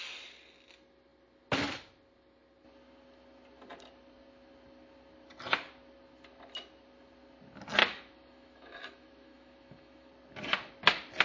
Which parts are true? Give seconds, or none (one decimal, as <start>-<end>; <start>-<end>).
0.0-7.8; 10.1-11.2